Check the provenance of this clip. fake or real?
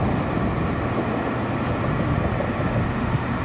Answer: real